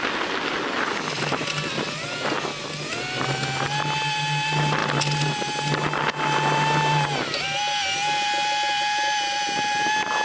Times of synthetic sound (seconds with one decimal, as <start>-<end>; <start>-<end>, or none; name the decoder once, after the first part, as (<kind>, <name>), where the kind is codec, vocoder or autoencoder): none